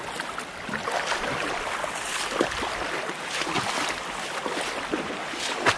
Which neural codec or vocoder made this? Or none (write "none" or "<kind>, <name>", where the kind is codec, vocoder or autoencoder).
none